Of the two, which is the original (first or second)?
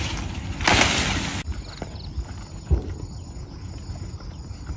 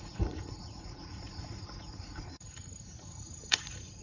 first